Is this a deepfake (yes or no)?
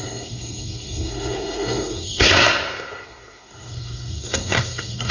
yes